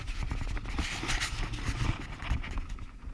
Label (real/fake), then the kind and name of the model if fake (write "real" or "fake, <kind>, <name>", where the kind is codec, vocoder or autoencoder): real